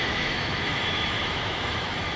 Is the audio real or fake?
fake